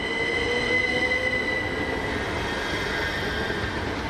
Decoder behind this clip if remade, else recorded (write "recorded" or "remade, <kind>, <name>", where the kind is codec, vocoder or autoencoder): recorded